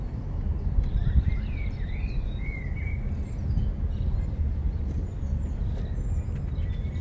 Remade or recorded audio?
recorded